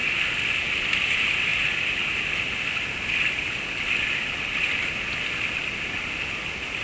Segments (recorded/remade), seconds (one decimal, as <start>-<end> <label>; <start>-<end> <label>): 0.0-6.8 recorded